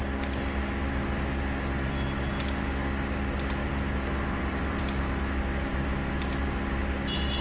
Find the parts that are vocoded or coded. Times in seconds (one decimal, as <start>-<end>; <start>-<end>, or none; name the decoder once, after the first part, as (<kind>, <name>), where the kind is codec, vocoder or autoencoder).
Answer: 3.6-4.8 (vocoder, BigVGAN v2)